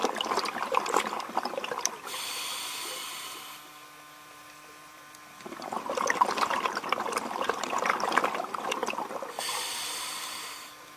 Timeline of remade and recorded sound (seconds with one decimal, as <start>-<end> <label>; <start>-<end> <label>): 0.0-3.0 remade; 3.0-4.3 recorded; 4.3-8.8 remade; 8.8-9.4 recorded; 9.4-11.0 remade